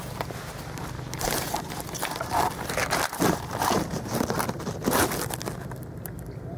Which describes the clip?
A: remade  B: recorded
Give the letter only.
A